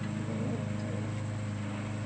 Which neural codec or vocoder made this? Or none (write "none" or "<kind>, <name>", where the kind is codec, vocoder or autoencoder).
none